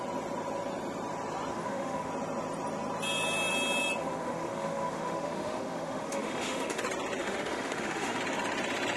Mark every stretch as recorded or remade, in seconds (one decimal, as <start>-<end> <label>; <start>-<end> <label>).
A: 0.0-1.5 recorded; 1.5-2.1 remade; 2.1-4.0 recorded; 4.0-6.8 remade; 6.8-7.2 recorded; 7.2-8.2 remade; 8.2-9.0 recorded